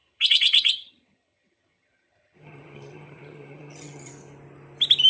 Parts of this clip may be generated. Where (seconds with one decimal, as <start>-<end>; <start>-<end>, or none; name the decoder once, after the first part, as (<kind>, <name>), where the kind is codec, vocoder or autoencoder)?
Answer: 0.0-4.1 (vocoder, HiFi-GAN)